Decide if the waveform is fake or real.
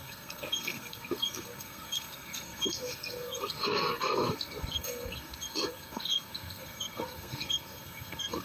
fake